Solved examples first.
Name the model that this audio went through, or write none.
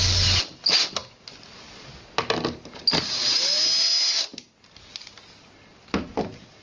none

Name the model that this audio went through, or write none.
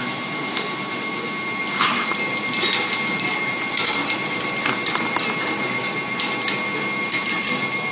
vocoder, BigVGAN v2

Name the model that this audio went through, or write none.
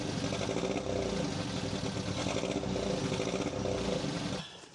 none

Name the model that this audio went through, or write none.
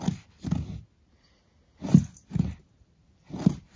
none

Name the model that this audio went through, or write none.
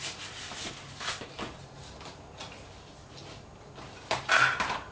none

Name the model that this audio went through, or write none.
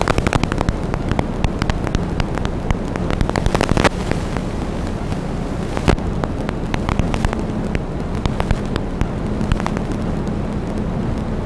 none